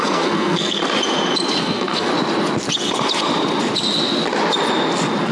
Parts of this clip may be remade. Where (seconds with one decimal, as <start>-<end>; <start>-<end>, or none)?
0.0-0.8; 1.6-2.1